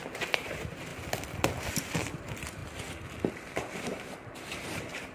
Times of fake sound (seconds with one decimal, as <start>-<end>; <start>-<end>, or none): 0.0-0.9; 1.7-2.6; 3.3-5.1